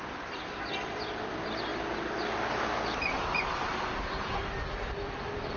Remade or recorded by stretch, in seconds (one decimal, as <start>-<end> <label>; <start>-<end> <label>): 0.0-5.6 recorded